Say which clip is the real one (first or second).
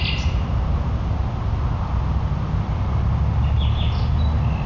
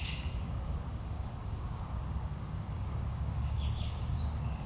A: first